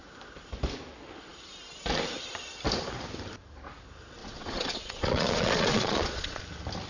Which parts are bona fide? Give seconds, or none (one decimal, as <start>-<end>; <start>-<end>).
0.0-4.2; 6.4-6.9